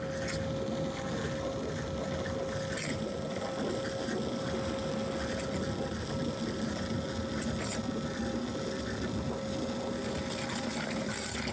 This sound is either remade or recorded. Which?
recorded